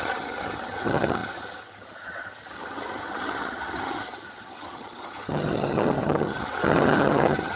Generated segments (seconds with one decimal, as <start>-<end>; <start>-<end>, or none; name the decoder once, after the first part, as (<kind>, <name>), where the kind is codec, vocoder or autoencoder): 0.0-7.6 (vocoder, HiFi-GAN)